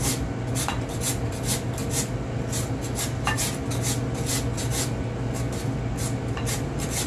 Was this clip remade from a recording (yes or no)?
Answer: no